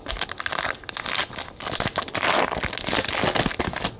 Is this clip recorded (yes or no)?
yes